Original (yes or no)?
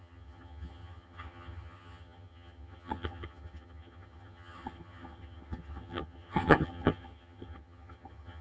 no